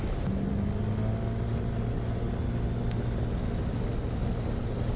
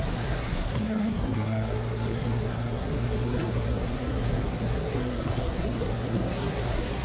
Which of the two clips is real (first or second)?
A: first